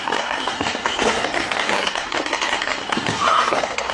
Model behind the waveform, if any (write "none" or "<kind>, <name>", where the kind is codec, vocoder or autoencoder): codec, SNAC